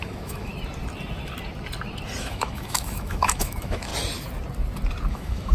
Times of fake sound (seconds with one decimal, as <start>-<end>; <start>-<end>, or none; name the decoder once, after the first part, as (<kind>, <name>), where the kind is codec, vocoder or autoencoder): 0.0-0.5 (autoencoder, DAC-VAE); 2.2-3.9; 5.1-5.5